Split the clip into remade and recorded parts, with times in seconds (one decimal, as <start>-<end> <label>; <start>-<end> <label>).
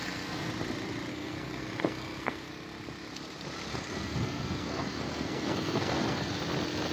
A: 0.0-0.5 remade; 0.5-1.1 recorded; 1.1-2.5 remade; 2.5-3.7 recorded; 3.7-6.3 remade; 6.3-6.9 recorded